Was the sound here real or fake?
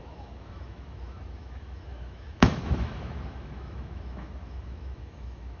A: fake